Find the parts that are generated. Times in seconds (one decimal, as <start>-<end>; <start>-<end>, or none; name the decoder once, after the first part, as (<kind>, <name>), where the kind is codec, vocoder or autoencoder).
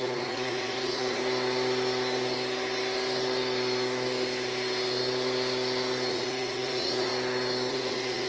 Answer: 0.0-1.2 (vocoder, Vocos); 6.1-7.1; 7.7-8.3